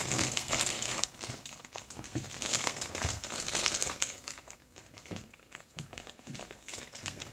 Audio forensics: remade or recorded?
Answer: remade